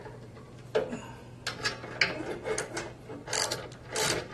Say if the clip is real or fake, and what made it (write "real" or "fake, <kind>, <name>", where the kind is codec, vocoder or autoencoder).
real